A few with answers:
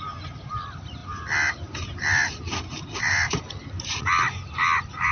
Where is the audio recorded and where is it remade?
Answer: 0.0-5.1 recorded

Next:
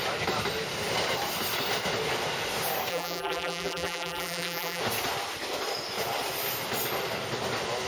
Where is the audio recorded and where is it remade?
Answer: 0.0-2.9 recorded; 2.9-4.8 remade; 4.8-7.9 recorded

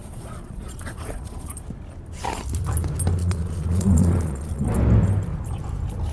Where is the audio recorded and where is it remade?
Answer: 0.0-1.5 remade; 1.5-3.2 recorded; 3.2-4.7 remade; 4.7-6.1 recorded

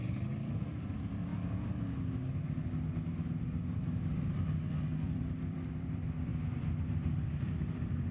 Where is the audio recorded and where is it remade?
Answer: 0.0-1.3 remade; 1.3-4.3 recorded; 4.3-8.1 remade

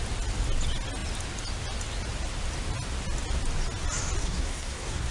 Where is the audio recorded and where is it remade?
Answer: 0.0-4.2 recorded; 4.2-5.1 remade

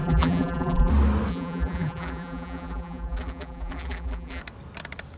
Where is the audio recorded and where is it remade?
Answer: 0.0-0.9 remade; 0.9-1.3 recorded; 1.3-4.4 remade; 4.4-5.2 recorded